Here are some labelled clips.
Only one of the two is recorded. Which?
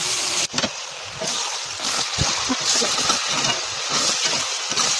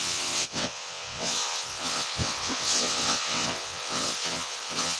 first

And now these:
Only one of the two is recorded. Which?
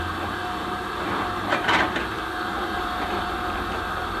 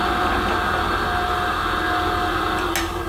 second